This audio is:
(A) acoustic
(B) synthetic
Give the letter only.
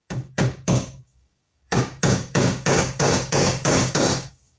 B